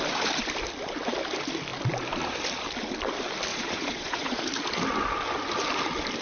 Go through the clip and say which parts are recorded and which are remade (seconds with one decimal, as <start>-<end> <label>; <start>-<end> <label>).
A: 0.0-3.5 recorded; 3.5-4.4 remade; 4.4-6.2 recorded